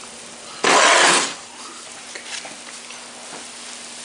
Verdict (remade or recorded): recorded